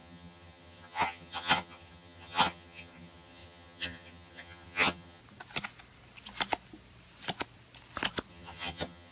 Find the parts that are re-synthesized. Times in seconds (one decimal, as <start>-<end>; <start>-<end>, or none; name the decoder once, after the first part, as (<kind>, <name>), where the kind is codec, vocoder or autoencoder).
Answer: 0.0-5.2 (vocoder, HiFi-GAN); 8.3-9.1